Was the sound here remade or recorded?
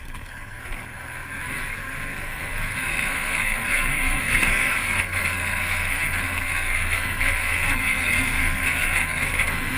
remade